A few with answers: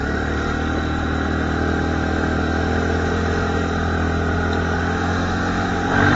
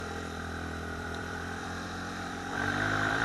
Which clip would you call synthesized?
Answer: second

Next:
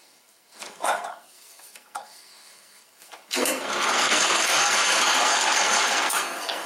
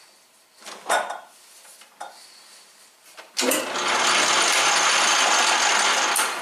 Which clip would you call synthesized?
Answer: first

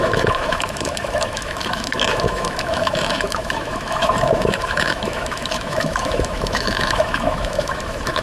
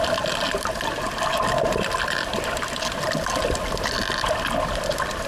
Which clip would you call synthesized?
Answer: first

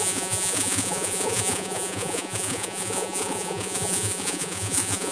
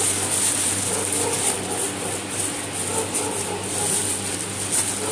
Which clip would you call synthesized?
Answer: first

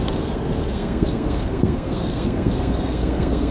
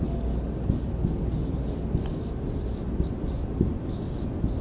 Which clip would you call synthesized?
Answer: first